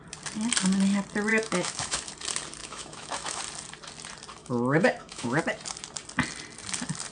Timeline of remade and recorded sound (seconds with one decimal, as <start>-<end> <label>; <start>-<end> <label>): 0.0-1.3 recorded; 1.3-2.1 remade; 2.1-2.6 recorded; 2.6-3.4 remade; 3.4-4.4 recorded; 4.4-5.4 remade; 5.4-7.1 recorded